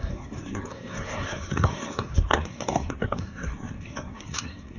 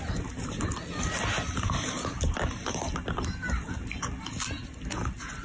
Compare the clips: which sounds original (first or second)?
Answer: second